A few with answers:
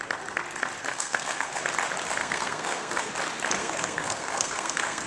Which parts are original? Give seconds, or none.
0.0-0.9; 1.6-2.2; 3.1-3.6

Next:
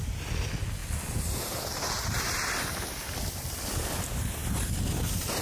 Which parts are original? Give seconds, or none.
0.0-5.4